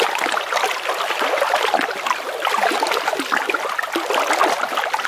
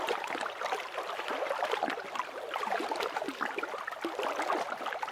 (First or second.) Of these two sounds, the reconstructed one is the second